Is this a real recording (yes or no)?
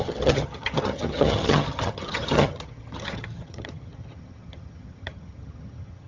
no